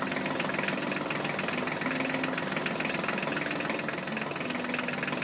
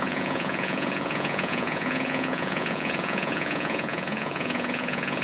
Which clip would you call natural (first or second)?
first